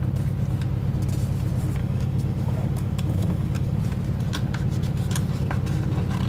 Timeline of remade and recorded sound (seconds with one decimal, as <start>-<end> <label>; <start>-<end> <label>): 0.0-1.8 recorded; 1.8-3.8 remade; 3.8-6.3 recorded